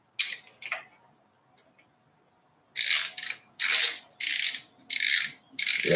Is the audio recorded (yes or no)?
yes